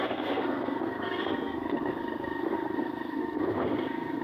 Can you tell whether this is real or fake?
fake